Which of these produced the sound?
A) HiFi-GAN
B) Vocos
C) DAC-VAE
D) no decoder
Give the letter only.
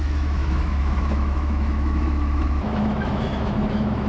C